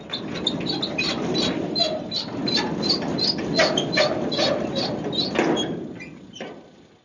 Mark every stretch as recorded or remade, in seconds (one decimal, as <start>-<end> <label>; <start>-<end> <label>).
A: 0.0-7.0 recorded